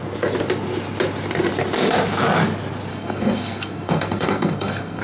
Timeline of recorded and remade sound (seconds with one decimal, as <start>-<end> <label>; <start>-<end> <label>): 0.0-2.9 recorded; 2.9-5.0 remade